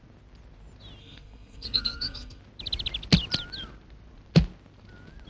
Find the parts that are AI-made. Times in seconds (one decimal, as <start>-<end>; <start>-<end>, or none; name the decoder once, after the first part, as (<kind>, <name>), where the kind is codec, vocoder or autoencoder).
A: 1.0-2.4 (codec, SNAC)